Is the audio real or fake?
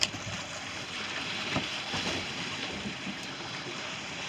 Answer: fake